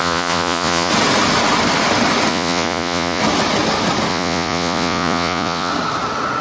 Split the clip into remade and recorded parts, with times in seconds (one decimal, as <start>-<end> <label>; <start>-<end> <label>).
0.0-0.9 remade; 0.9-2.3 recorded; 2.3-3.2 remade; 3.2-4.1 recorded; 4.1-5.7 remade; 5.7-6.4 recorded